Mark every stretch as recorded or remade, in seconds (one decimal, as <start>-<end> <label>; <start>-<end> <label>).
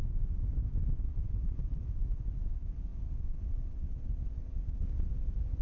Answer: 0.0-5.6 recorded